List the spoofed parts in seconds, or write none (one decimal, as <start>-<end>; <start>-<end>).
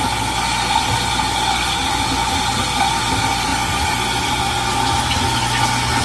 none